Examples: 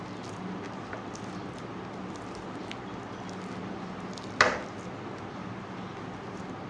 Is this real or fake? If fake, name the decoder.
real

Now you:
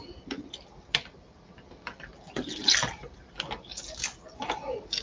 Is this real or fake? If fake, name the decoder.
real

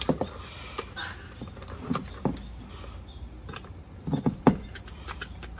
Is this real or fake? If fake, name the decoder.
real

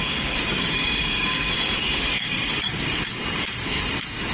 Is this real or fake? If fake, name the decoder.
fake, codec, DAC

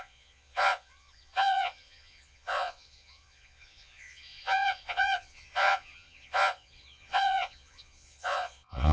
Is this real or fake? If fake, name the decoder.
fake, vocoder, Vocos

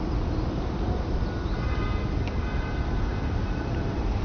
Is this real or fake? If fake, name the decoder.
real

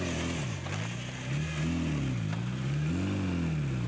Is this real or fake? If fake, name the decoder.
real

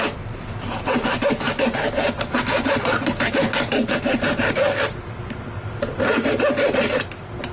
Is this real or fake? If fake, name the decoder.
real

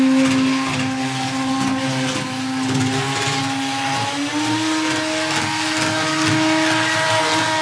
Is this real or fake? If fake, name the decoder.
real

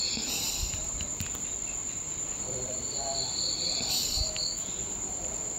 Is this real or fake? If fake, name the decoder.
fake, vocoder, BigVGAN v2